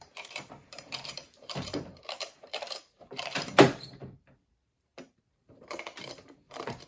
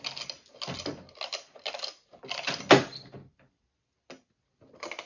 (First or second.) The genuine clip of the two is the second